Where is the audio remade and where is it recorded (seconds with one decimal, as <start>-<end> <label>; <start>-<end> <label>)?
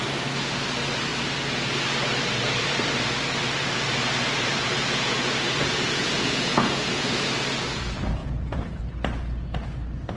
0.0-4.5 recorded; 4.5-7.3 remade; 7.3-8.2 recorded; 8.2-8.8 remade; 8.8-10.2 recorded